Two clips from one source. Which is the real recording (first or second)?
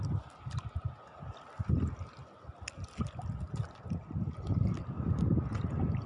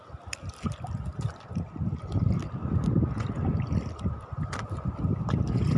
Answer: first